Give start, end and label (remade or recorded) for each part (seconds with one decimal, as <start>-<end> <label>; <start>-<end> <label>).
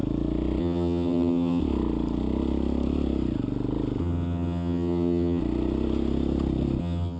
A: 0.0-0.6 recorded; 0.6-1.6 remade; 1.6-4.0 recorded; 4.0-5.4 remade; 5.4-6.8 recorded; 6.8-7.2 remade